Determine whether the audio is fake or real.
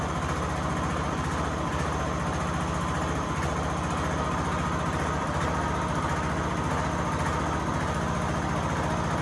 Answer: real